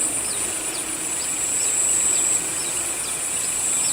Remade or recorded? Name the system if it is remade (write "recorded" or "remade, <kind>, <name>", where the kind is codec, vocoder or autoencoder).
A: remade, vocoder, Vocos